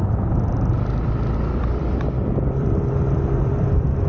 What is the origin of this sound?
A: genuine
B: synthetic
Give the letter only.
B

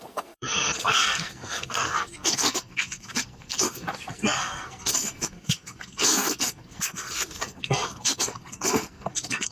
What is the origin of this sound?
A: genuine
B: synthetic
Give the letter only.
B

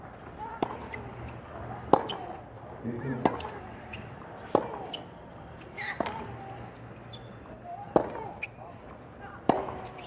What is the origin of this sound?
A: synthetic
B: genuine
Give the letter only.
B